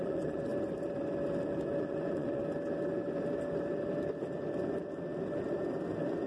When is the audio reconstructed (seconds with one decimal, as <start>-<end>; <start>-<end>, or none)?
0.0-0.5; 1.8-2.4